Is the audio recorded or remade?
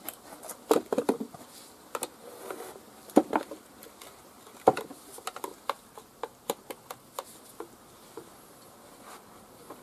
recorded